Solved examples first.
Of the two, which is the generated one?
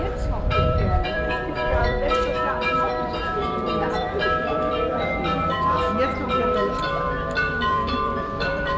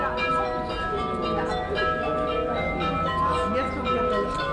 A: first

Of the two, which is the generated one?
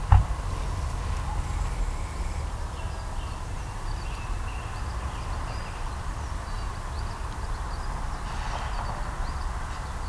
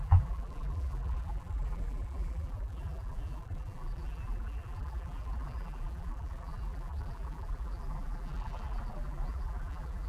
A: second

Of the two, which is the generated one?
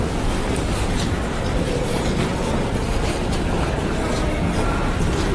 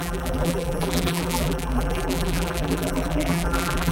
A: second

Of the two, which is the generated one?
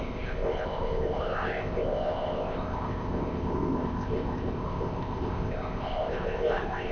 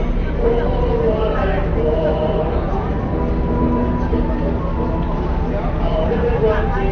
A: first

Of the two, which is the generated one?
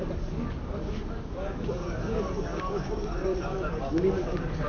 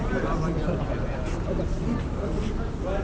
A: first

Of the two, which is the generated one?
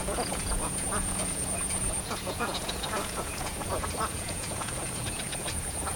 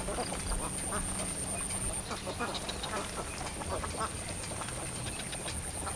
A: first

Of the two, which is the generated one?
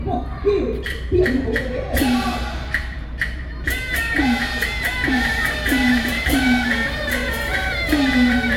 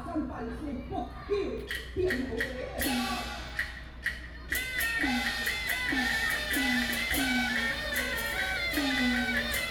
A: first